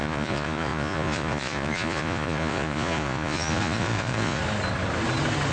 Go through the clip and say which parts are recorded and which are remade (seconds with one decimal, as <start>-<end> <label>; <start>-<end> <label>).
0.0-4.4 remade; 4.4-5.5 recorded